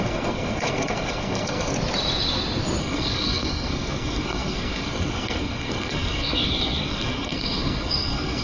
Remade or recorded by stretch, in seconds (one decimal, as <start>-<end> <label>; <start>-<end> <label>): 0.0-1.7 remade; 1.7-2.8 recorded; 2.8-8.4 remade